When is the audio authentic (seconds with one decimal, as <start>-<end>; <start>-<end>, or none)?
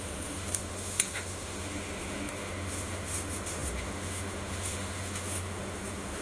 none